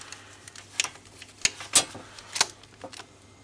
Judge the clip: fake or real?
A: real